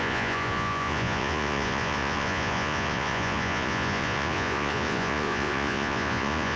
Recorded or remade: remade